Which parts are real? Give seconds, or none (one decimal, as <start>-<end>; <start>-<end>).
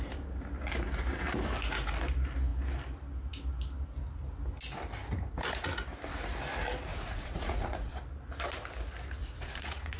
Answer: 0.0-6.9; 7.9-9.2